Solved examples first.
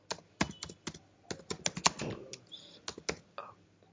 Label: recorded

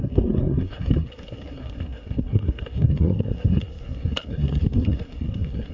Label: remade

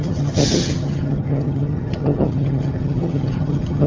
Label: remade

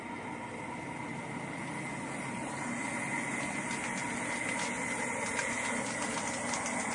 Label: recorded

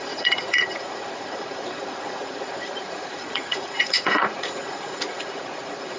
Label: remade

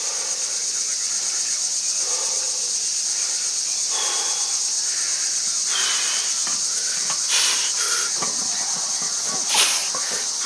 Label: recorded